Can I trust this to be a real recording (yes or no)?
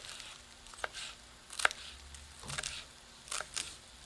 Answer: yes